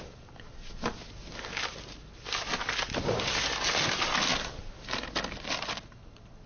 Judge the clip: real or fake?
real